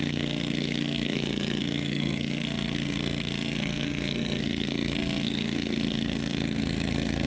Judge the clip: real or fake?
fake